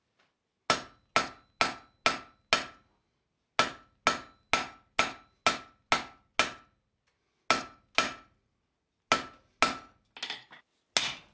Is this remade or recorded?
recorded